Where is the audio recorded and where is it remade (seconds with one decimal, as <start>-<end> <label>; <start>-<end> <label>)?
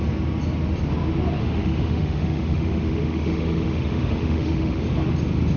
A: 0.0-1.4 recorded; 1.4-4.8 remade; 4.8-5.6 recorded